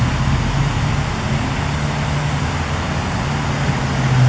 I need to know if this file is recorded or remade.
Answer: recorded